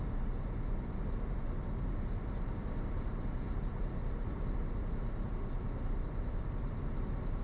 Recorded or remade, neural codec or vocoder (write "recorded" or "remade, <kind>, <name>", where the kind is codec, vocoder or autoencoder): recorded